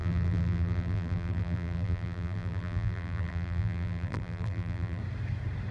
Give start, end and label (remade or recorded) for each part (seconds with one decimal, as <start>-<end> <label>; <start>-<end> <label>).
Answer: 0.0-5.0 remade; 5.0-5.7 recorded